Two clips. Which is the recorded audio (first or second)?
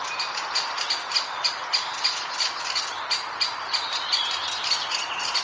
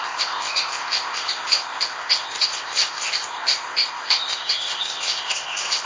first